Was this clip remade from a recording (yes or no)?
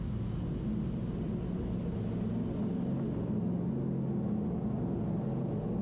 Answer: no